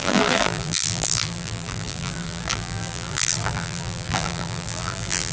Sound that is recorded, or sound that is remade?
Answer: remade